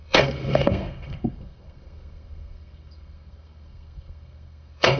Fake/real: fake